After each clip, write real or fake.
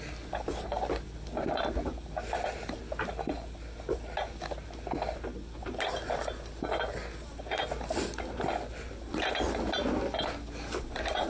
real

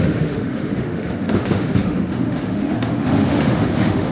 fake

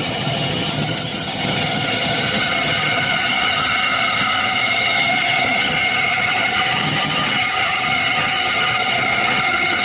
fake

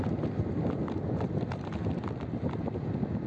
real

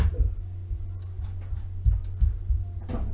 real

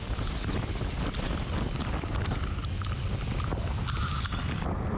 real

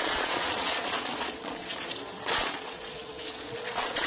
fake